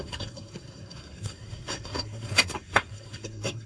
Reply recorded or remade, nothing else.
remade